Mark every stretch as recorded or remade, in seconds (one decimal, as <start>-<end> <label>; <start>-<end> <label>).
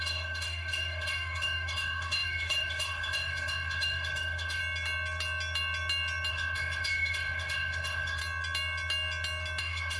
0.0-4.6 remade; 4.6-6.3 recorded; 6.3-8.2 remade; 8.2-9.6 recorded; 9.6-10.0 remade